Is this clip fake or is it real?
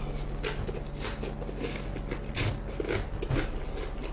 real